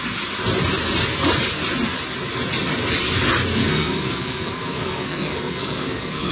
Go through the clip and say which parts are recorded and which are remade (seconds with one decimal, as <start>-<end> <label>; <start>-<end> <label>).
0.0-3.6 recorded; 3.6-6.3 remade